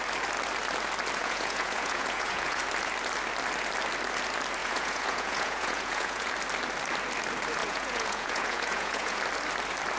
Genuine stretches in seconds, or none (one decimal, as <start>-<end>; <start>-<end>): 0.0-1.2; 2.6-4.6; 6.3-7.6; 9.2-10.0